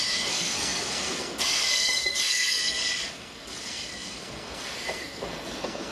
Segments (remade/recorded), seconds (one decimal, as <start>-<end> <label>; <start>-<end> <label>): 0.0-5.9 remade